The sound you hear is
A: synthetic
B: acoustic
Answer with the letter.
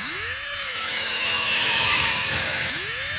A